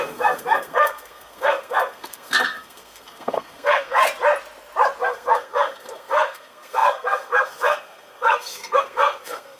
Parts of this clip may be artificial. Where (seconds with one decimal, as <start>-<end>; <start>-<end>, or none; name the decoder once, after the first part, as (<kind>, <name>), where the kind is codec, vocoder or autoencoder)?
0.0-4.0 (codec, SNAC); 5.0-9.6